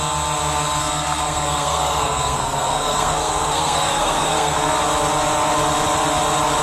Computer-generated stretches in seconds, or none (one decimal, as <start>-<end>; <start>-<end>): 0.8-4.8